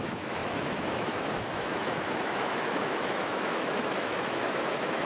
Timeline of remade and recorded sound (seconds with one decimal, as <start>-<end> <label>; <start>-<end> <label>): 0.0-5.0 remade

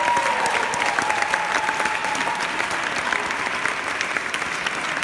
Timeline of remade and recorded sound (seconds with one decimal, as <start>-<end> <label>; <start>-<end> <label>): 0.0-2.0 recorded; 2.0-4.5 remade; 4.5-5.0 recorded

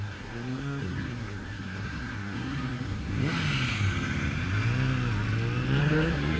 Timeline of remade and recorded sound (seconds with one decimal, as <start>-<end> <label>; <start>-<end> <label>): 0.0-3.2 remade; 3.2-5.8 recorded; 5.8-6.4 remade

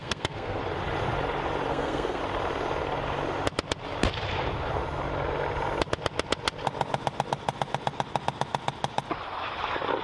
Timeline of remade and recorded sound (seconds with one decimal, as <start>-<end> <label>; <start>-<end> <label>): 0.0-0.6 remade; 0.6-1.7 recorded; 1.7-2.2 remade; 2.2-10.0 recorded

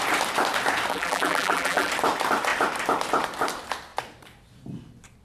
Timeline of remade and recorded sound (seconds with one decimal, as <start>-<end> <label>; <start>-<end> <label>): 0.0-0.9 recorded; 0.9-1.9 remade; 1.9-5.2 recorded

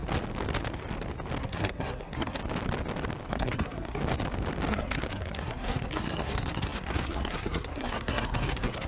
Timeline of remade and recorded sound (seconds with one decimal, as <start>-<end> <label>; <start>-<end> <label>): 0.0-1.4 recorded; 1.4-2.4 remade; 2.4-3.3 recorded; 3.3-4.0 remade; 4.0-4.7 recorded; 4.7-8.9 remade